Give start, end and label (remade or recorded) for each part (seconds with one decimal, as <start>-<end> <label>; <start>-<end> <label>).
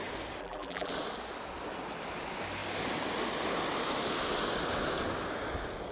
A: 0.0-0.4 recorded; 0.4-0.9 remade; 0.9-5.9 recorded